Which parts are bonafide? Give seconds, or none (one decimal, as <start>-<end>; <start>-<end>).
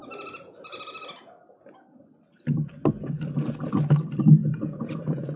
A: 0.0-4.4